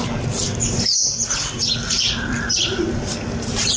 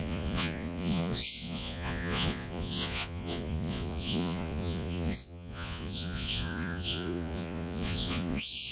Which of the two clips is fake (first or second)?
second